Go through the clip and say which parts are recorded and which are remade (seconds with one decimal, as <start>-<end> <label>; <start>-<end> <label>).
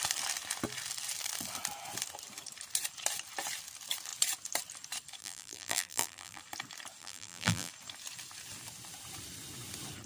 0.0-5.2 recorded; 5.2-6.4 remade; 6.4-7.0 recorded; 7.0-7.7 remade; 7.7-10.1 recorded